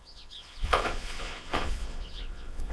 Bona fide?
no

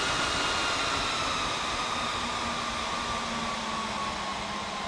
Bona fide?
yes